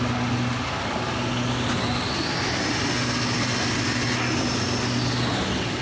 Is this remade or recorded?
recorded